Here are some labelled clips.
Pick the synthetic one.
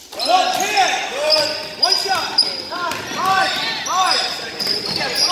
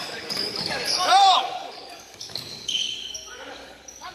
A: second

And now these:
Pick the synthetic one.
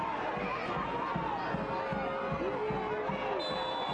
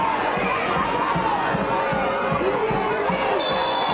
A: second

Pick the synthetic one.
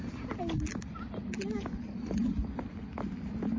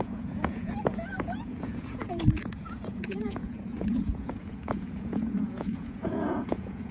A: second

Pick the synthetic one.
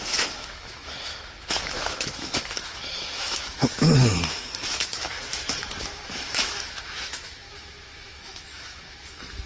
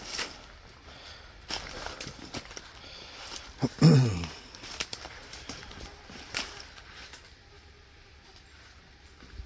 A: first